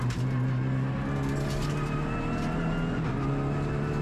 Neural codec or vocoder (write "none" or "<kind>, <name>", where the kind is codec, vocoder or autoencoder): none